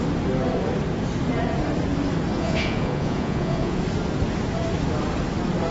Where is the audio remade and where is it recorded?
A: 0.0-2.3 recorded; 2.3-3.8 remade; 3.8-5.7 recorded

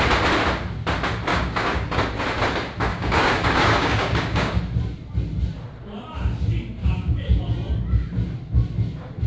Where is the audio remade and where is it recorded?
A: 0.0-1.3 recorded; 1.3-2.0 remade; 2.0-2.9 recorded; 2.9-4.6 remade; 4.6-6.8 recorded; 6.8-7.4 remade; 7.4-9.3 recorded

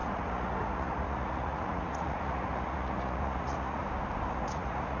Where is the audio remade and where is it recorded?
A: 0.0-3.8 remade; 3.8-4.3 recorded; 4.3-5.0 remade

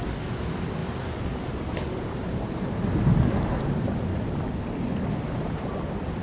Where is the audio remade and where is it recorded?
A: 0.0-6.2 remade

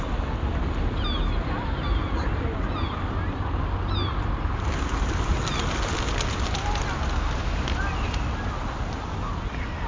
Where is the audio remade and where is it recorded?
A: 0.0-9.9 recorded

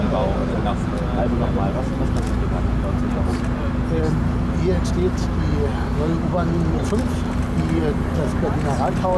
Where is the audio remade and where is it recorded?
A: 0.0-9.2 recorded

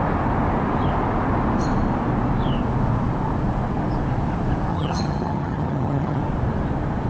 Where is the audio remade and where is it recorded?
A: 0.0-4.7 recorded; 4.7-6.2 remade; 6.2-7.1 recorded

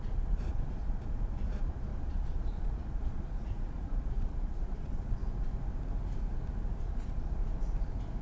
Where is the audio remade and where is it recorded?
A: 0.0-5.2 remade; 5.2-6.8 recorded; 6.8-7.4 remade; 7.4-8.2 recorded